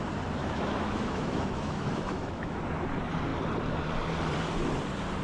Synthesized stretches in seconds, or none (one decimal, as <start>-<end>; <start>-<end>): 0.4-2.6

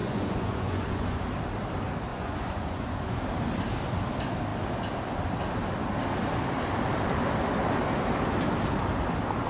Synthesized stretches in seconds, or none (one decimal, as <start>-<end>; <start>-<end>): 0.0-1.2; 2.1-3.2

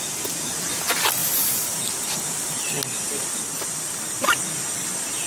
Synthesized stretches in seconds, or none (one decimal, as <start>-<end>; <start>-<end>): none

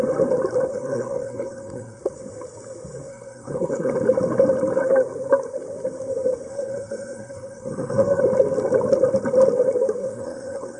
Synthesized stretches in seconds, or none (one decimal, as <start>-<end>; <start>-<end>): 0.7-2.0; 3.1-3.9; 6.5-8.2; 10.0-10.8

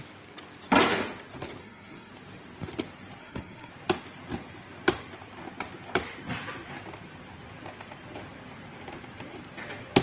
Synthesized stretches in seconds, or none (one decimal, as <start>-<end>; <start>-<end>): 1.6-2.1; 3.2-3.7